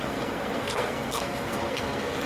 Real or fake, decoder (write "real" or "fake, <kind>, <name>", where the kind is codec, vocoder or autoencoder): fake, codec, SNAC